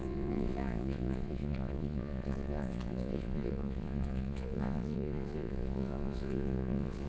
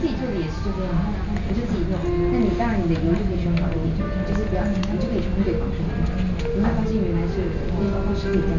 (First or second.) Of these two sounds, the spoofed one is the first